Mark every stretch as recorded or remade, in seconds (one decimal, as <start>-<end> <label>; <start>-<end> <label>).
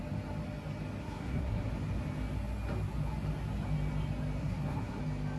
0.0-1.0 recorded; 1.0-1.7 remade; 1.7-4.4 recorded; 4.4-5.0 remade; 5.0-5.4 recorded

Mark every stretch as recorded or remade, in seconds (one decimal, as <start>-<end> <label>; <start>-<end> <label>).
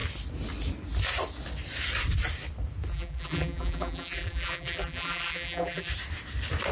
0.0-2.9 recorded; 2.9-5.9 remade; 5.9-6.7 recorded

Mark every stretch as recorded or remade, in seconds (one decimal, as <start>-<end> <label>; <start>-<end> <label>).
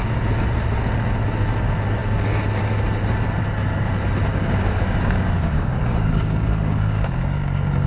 0.0-4.3 recorded; 4.3-7.9 remade